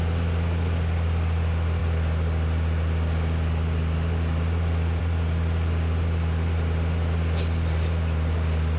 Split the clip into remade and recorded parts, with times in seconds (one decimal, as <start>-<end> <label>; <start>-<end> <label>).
0.0-8.8 recorded